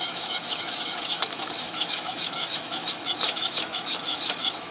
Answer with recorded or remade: remade